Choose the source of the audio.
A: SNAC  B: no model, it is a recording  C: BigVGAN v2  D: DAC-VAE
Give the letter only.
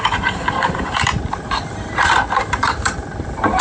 C